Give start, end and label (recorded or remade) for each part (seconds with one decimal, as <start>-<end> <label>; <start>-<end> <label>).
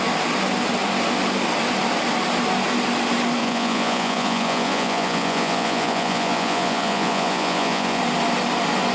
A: 0.0-3.4 recorded; 3.4-8.0 remade; 8.0-8.9 recorded